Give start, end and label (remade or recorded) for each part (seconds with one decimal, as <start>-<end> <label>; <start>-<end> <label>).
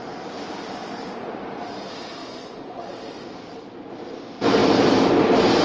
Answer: 0.0-2.2 recorded; 2.2-2.9 remade; 2.9-5.6 recorded